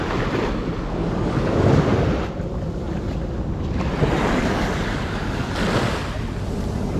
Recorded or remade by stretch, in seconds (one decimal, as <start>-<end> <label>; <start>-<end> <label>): 0.0-1.0 recorded; 1.0-1.6 remade; 1.6-4.4 recorded; 4.4-5.5 remade; 5.5-7.0 recorded